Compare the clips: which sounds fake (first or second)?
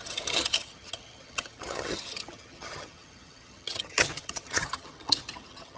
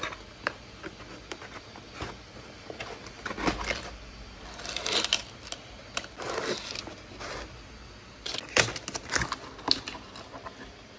first